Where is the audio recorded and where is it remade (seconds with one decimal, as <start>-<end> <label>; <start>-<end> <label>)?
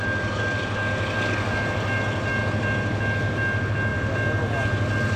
0.0-5.2 recorded